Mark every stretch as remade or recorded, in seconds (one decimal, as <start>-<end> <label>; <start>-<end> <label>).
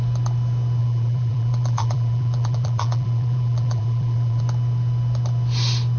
0.0-0.8 recorded; 0.8-4.4 remade; 4.4-6.0 recorded